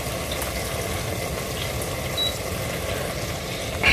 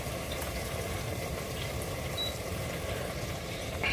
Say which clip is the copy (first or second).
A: second